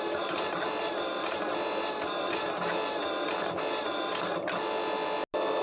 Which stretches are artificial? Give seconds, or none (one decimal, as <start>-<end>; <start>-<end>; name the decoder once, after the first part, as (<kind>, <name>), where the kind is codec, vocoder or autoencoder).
none